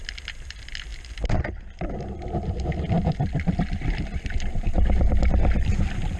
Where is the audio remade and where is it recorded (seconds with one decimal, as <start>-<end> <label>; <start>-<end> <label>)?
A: 0.0-6.2 recorded